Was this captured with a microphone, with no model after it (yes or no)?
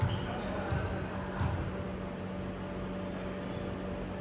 yes